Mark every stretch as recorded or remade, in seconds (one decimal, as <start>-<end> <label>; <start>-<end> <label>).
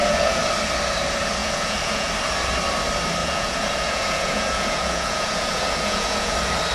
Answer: 0.0-0.5 remade; 0.5-1.4 recorded; 1.4-2.1 remade; 2.1-3.2 recorded; 3.2-6.3 remade; 6.3-6.7 recorded